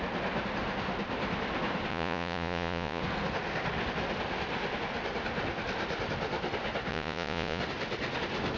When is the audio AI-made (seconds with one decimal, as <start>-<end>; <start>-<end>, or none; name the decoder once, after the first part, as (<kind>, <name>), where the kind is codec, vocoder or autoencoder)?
1.9-3.0 (vocoder, Vocos); 6.9-7.6